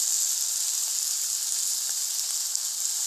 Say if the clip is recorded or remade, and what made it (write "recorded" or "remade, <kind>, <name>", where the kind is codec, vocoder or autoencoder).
recorded